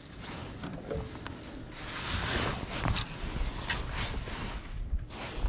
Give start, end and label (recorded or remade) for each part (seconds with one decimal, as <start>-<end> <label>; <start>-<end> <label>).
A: 0.0-0.4 recorded; 0.4-3.7 remade; 3.7-5.5 recorded